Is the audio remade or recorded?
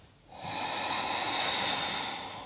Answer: recorded